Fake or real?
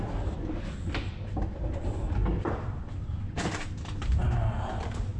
real